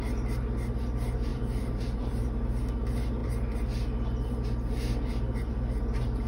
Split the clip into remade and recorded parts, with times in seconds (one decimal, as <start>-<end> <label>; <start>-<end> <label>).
0.0-1.3 recorded; 1.3-2.3 remade; 2.3-6.3 recorded